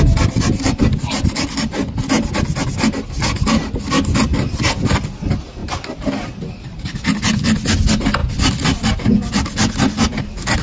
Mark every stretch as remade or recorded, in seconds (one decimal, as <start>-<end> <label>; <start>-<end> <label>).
0.0-5.6 recorded; 5.6-7.2 remade; 7.2-10.6 recorded